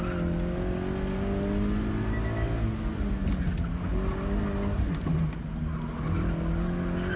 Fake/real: real